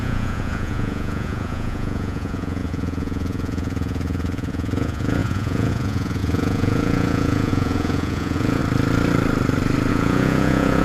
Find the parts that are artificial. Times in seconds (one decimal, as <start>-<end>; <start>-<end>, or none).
0.0-8.6; 9.9-10.8